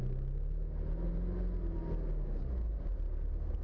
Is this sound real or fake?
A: real